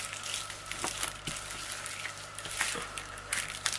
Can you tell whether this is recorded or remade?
recorded